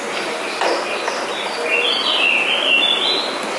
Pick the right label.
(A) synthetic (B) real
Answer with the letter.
B